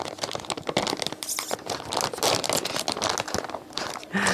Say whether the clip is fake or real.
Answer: real